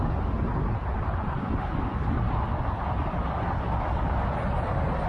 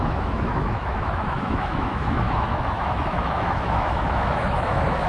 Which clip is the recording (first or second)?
first